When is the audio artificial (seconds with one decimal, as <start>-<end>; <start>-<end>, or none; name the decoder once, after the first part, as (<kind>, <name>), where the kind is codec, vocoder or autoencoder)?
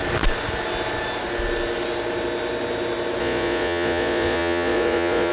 3.2-5.3 (vocoder, Vocos)